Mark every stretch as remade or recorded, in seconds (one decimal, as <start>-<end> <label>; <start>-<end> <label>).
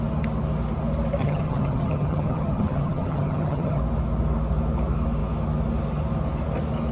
0.0-1.2 recorded; 1.2-3.8 remade; 3.8-6.9 recorded